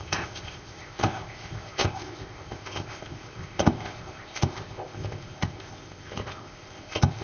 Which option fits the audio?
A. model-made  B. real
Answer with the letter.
A